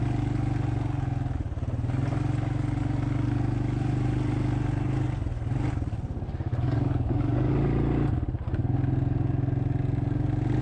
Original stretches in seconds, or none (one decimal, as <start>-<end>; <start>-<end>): 0.0-6.5; 7.5-10.6